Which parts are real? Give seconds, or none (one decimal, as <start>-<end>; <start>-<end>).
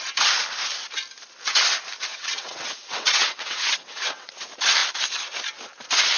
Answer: 0.0-2.1; 4.3-6.2